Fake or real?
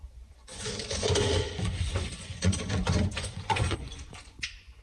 fake